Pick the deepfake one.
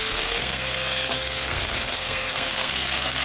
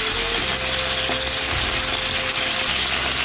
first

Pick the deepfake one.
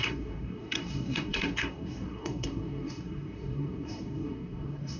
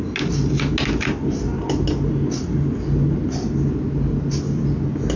first